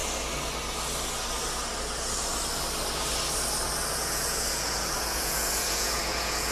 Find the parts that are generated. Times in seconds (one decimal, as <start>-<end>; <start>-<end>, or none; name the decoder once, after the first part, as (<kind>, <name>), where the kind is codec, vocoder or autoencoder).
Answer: 3.9-6.5 (vocoder, Vocos)